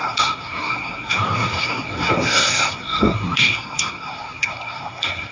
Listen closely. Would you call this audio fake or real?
fake